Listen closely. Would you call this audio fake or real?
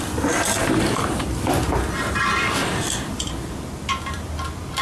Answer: fake